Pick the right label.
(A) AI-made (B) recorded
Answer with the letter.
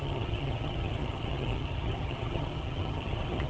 A